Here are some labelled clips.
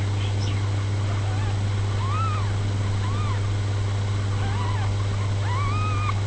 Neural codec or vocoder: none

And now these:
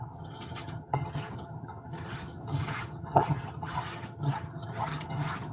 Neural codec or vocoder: vocoder, HiFi-GAN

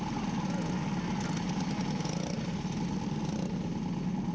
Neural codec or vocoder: none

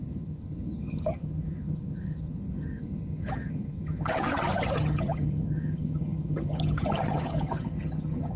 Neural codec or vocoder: vocoder, HiFi-GAN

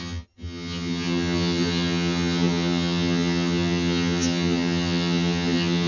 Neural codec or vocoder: vocoder, HiFi-GAN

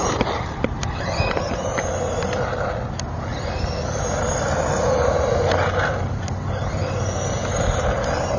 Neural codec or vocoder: none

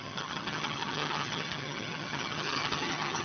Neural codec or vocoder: vocoder, HiFi-GAN